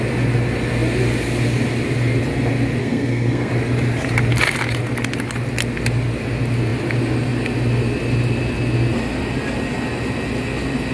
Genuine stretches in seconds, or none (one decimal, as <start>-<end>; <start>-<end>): 0.0-2.8; 3.5-10.9

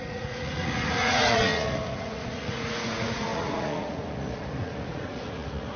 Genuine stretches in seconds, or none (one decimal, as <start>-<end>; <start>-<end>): none

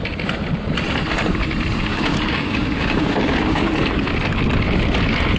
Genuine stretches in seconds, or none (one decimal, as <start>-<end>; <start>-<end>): 0.0-1.9; 3.7-5.4

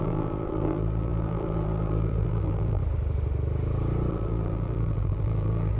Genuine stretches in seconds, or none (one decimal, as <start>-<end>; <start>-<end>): 2.8-4.1

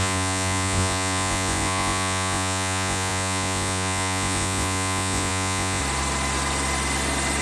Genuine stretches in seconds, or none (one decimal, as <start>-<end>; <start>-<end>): 5.8-7.4